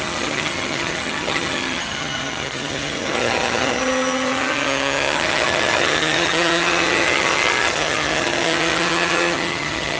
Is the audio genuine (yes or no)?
no